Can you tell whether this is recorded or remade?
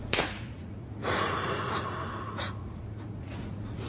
remade